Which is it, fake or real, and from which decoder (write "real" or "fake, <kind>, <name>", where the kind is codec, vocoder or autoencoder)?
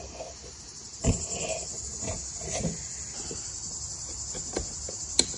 real